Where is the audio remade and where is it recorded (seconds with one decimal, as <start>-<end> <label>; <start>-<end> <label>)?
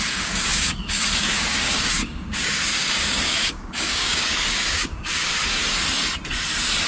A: 0.0-5.6 remade; 5.6-6.9 recorded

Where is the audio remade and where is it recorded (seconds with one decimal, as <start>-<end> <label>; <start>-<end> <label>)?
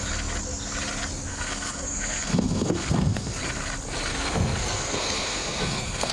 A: 0.0-1.3 recorded; 1.3-3.4 remade; 3.4-4.1 recorded; 4.1-6.1 remade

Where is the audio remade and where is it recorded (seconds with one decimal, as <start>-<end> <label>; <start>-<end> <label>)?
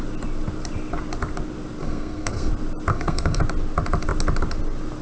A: 0.0-1.8 recorded; 1.8-2.5 remade; 2.5-2.9 recorded; 2.9-3.4 remade; 3.4-5.0 recorded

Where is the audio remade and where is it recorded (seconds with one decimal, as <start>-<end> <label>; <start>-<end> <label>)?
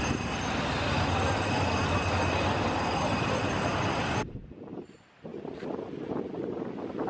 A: 0.0-7.1 recorded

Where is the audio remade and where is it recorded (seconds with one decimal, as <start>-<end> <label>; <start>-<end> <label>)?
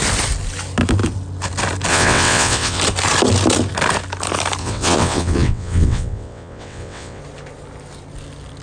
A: 0.0-1.9 recorded; 1.9-2.8 remade; 2.8-4.6 recorded; 4.6-7.2 remade; 7.2-8.6 recorded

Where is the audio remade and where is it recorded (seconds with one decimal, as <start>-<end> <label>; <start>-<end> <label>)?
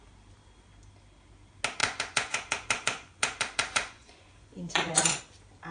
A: 0.0-1.8 recorded; 1.8-5.2 remade; 5.2-5.7 recorded